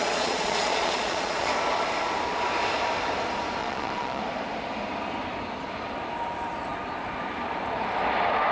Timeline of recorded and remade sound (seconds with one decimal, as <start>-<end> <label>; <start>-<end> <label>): 0.0-1.5 remade; 1.5-3.6 recorded; 3.6-4.2 remade; 4.2-8.5 recorded